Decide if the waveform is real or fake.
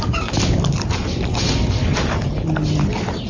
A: real